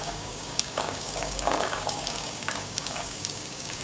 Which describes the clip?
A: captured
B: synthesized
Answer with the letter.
B